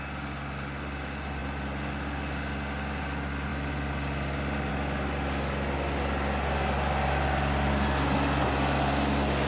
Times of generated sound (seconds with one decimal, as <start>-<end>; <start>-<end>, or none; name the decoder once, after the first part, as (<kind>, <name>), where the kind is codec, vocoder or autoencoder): none